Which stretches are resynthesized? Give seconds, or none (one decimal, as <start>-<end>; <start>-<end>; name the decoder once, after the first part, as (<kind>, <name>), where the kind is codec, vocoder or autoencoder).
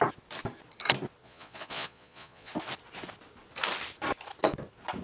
1.2-2.5 (vocoder, Vocos)